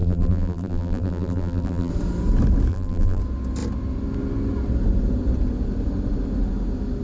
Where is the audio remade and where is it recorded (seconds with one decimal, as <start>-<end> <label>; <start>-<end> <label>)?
0.0-1.9 remade; 1.9-2.7 recorded; 2.7-3.2 remade; 3.2-7.0 recorded